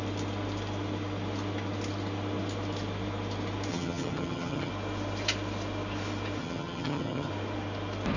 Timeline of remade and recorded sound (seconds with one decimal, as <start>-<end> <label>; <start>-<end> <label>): 0.0-3.7 recorded; 3.7-4.7 remade; 4.7-6.4 recorded; 6.4-7.3 remade; 7.3-8.2 recorded